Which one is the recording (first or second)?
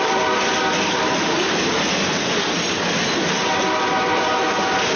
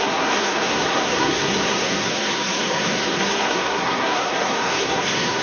first